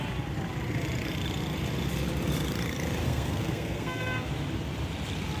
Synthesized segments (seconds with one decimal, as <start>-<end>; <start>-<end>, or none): 3.0-4.3